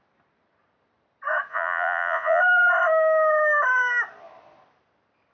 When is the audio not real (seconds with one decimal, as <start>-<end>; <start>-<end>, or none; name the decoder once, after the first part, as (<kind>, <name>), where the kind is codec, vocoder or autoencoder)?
1.5-2.4 (vocoder, Vocos)